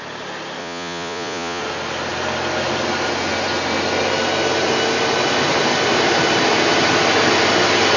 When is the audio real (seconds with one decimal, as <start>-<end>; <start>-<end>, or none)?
0.0-0.6; 1.6-8.0